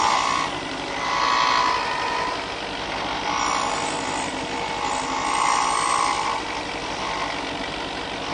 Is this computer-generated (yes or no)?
no